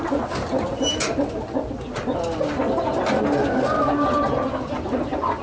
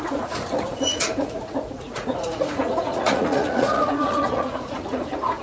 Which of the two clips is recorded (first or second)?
first